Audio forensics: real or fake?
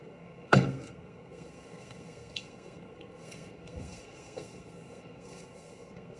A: fake